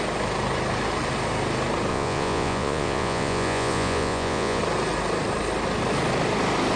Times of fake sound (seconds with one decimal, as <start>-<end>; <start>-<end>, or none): 1.9-4.6